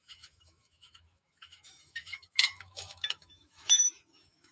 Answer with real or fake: fake